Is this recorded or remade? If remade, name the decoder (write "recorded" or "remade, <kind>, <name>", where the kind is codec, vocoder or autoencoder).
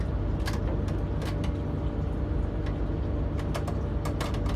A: recorded